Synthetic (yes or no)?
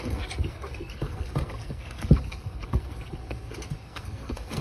yes